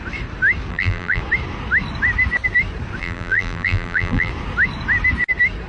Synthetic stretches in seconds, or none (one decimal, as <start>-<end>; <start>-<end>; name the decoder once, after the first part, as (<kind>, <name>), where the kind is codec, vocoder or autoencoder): 0.7-1.2 (vocoder, BigVGAN v2); 3.0-4.3